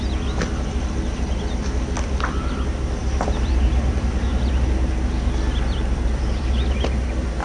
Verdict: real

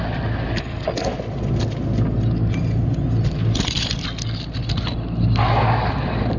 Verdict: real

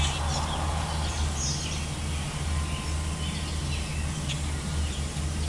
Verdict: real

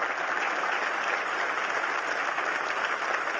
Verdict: real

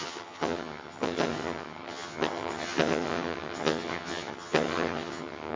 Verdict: fake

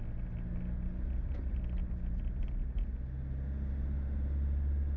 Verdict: real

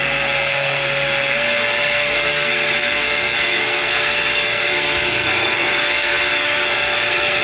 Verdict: fake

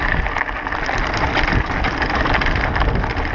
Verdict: real